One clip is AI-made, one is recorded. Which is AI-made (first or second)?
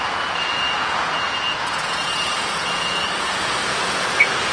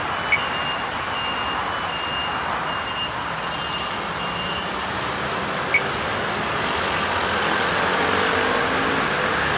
first